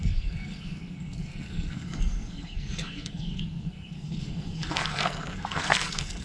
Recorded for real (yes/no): no